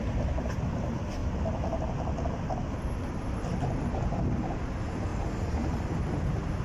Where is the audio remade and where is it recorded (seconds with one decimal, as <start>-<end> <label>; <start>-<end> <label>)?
0.0-6.6 recorded